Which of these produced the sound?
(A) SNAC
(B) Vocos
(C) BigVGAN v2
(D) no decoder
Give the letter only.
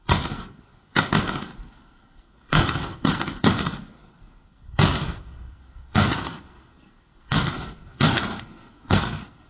A